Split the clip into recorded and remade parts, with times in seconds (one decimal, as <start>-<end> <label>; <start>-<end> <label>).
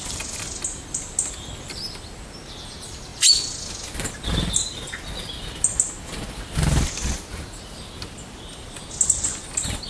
0.0-9.9 recorded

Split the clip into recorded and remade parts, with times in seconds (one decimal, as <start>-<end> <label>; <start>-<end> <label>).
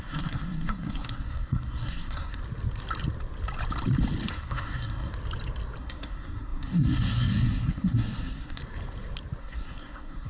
0.0-2.4 remade; 2.4-4.3 recorded; 4.3-5.1 remade; 5.1-5.8 recorded; 5.8-8.6 remade; 8.6-9.4 recorded; 9.4-10.3 remade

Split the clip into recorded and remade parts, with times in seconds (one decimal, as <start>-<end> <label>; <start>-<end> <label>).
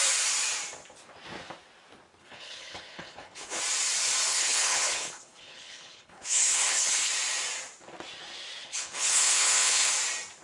0.0-2.2 recorded; 2.2-3.6 remade; 3.6-4.3 recorded; 4.3-7.1 remade; 7.1-8.6 recorded; 8.6-9.9 remade; 9.9-10.4 recorded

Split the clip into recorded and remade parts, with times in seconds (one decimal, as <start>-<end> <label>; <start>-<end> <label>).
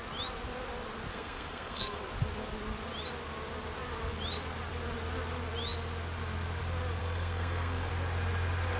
0.0-1.1 recorded; 1.1-2.0 remade; 2.0-7.0 recorded; 7.0-7.9 remade; 7.9-8.8 recorded